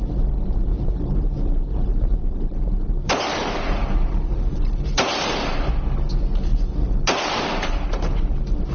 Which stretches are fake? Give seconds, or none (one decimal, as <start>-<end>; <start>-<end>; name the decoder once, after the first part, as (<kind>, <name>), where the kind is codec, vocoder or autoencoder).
0.7-5.7 (vocoder, BigVGAN v2); 6.5-8.2